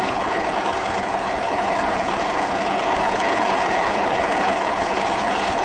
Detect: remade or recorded remade